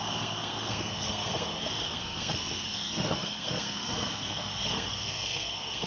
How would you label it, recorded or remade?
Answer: remade